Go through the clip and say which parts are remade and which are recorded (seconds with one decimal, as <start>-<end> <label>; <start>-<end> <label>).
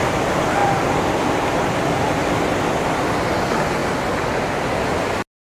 0.0-5.6 recorded